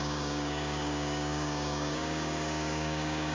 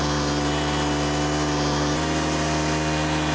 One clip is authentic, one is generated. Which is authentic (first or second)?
second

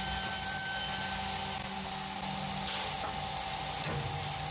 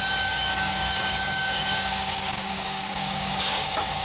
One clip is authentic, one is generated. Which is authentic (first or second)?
first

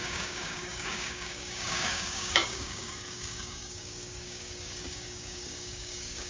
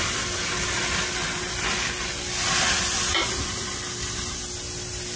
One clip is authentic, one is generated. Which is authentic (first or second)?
second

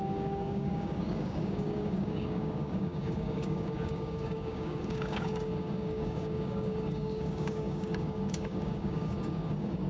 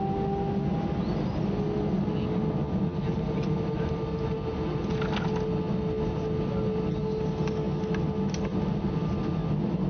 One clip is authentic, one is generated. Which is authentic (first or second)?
second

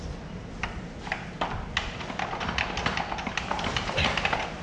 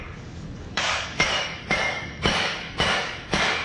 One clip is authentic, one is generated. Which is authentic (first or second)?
first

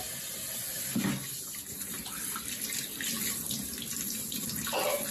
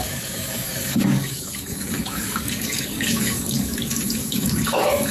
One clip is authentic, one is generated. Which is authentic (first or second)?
first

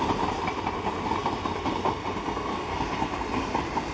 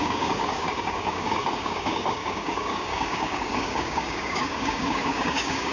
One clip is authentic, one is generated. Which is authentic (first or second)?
first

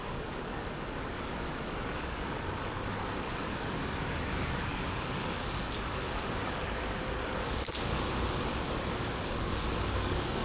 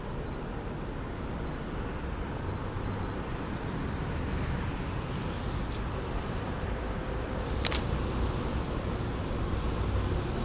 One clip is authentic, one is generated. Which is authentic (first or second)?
second